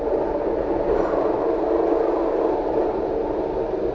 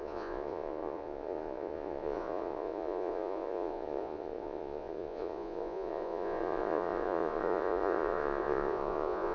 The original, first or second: first